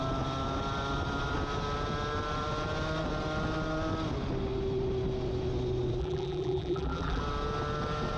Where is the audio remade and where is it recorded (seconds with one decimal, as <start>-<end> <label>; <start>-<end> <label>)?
0.0-6.0 recorded; 6.0-7.2 remade; 7.2-8.2 recorded

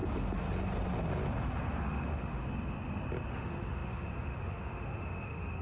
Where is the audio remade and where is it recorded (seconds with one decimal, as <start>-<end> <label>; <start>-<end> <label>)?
0.0-1.8 recorded; 1.8-2.4 remade; 2.4-3.3 recorded; 3.3-5.6 remade